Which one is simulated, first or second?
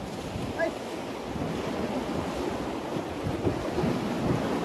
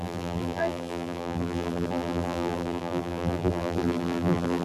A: second